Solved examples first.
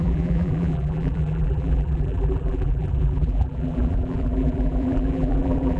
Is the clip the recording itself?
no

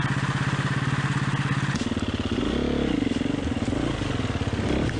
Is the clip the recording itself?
yes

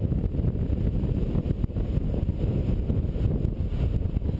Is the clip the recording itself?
yes